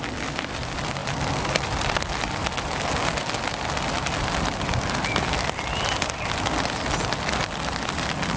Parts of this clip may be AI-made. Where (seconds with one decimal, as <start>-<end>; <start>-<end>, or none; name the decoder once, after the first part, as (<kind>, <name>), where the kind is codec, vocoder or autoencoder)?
none